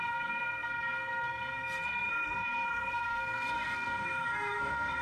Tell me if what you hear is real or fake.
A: fake